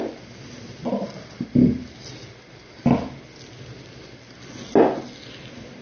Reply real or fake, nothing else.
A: real